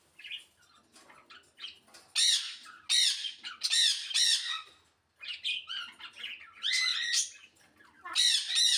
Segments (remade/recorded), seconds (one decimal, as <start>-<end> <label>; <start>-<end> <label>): 0.0-6.9 recorded; 6.9-7.6 remade; 7.6-8.8 recorded